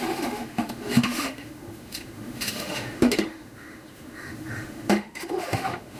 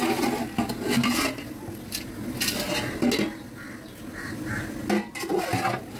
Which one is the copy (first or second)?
first